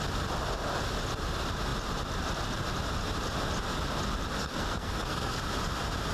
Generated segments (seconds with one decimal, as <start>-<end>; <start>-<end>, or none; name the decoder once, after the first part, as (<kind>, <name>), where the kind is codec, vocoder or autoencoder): 4.4-5.4 (codec, SNAC)

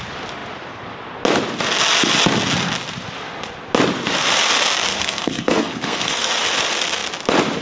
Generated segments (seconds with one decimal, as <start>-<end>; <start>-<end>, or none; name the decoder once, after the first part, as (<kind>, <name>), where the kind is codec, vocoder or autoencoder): 4.9-6.3 (codec, SNAC)

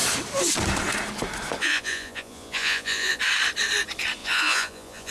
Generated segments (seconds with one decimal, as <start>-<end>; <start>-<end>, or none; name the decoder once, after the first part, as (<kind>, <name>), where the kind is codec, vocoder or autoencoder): 1.6-3.2 (vocoder, Vocos); 4.2-5.1

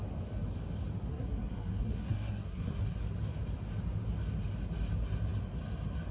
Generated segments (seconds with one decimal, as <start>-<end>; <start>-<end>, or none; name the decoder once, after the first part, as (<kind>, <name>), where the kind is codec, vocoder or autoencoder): 1.1-3.0 (codec, SNAC)

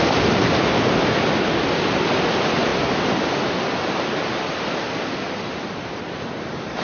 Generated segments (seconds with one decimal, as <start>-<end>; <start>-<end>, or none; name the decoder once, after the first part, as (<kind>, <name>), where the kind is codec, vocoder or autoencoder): none

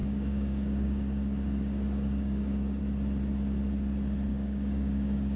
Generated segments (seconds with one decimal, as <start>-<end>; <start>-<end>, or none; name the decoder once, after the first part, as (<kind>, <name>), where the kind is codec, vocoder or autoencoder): 0.0-2.8 (codec, DAC); 4.3-5.4